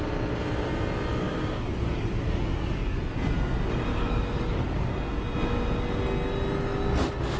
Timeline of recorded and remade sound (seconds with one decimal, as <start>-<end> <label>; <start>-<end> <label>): 0.0-1.1 recorded; 1.1-3.0 remade; 3.0-3.9 recorded; 3.9-4.9 remade; 4.9-7.4 recorded